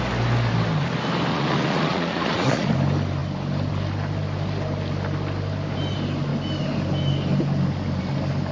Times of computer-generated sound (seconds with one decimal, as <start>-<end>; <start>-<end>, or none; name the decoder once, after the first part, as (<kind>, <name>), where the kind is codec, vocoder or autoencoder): 1.3-2.7 (vocoder, Vocos)